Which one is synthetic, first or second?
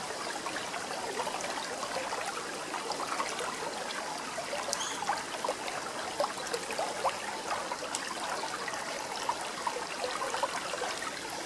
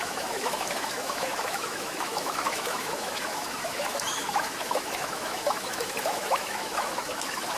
second